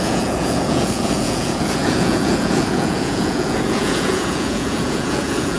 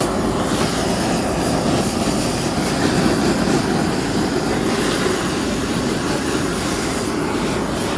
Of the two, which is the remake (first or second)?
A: first